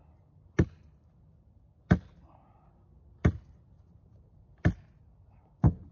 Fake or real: real